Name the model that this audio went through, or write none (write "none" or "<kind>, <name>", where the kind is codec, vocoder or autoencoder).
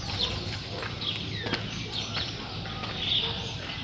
none